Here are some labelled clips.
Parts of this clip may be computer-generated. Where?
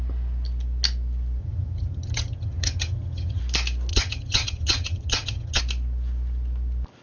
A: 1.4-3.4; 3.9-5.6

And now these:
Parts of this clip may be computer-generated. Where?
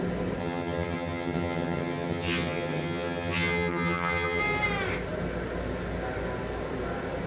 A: 0.4-4.4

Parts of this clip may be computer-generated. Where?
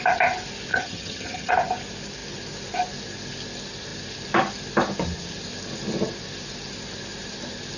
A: 0.7-1.5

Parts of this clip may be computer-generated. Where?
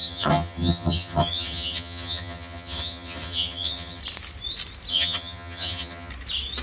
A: 0.0-4.0; 4.9-6.1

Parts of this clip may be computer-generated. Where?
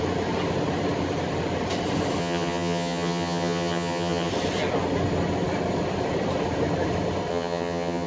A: 2.2-4.3; 7.3-8.1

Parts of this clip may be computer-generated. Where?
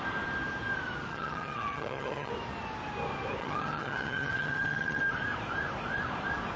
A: 1.1-2.3; 3.4-5.0